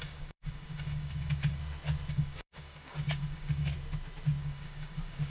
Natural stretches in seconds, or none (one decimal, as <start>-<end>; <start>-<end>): 1.6-2.1; 3.7-4.4